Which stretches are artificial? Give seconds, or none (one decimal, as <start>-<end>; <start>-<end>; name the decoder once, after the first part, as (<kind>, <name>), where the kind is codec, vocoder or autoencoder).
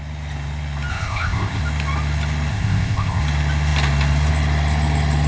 0.9-1.6 (codec, ZipCodec); 2.5-3.2